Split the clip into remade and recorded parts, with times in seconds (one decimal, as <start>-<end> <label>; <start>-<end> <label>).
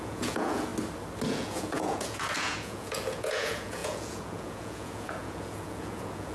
0.0-0.7 remade; 0.7-1.3 recorded; 1.3-6.3 remade